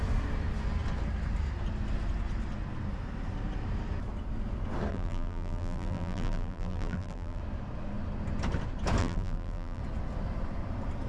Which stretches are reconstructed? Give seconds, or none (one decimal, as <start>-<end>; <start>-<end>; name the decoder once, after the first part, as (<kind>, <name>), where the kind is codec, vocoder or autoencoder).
4.9-7.4 (vocoder, BigVGAN v2); 9.0-9.8